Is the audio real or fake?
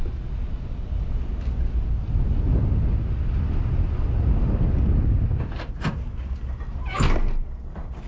real